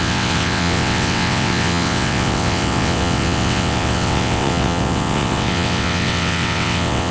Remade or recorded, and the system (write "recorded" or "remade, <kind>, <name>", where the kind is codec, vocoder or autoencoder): remade, vocoder, WaveNeXt